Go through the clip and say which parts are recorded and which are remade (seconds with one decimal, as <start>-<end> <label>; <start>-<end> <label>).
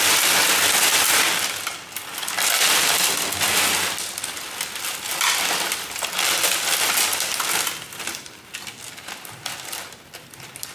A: 0.0-10.7 recorded